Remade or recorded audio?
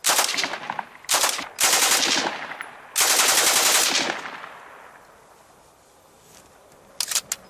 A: recorded